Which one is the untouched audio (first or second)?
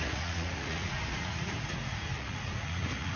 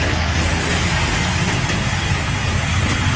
second